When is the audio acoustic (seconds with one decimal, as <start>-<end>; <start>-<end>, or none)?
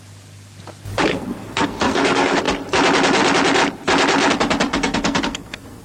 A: 0.0-1.1; 2.4-4.7